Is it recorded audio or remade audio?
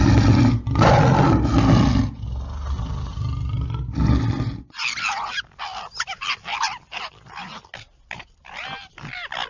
recorded